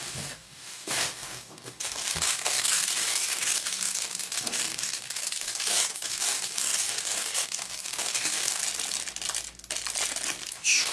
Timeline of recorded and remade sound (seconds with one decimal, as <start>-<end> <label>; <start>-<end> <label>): 0.0-8.6 remade; 8.6-10.5 recorded; 10.5-10.9 remade